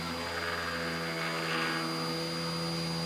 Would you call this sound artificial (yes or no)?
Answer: no